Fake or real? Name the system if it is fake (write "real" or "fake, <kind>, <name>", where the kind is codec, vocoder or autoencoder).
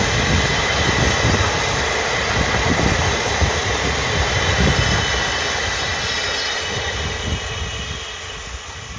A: real